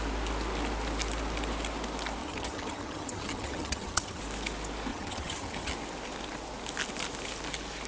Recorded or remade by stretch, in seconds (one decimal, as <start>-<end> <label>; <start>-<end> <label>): 0.0-2.2 recorded; 2.2-4.2 remade; 4.2-4.9 recorded; 4.9-5.7 remade; 5.7-7.9 recorded